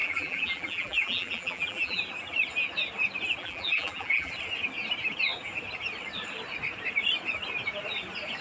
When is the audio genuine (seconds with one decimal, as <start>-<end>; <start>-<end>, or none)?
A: 2.0-3.4; 4.3-8.4